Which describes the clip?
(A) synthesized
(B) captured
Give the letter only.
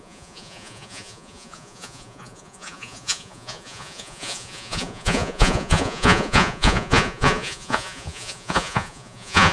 A